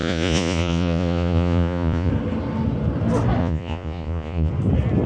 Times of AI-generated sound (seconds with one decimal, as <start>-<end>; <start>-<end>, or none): 0.0-2.1; 3.4-4.5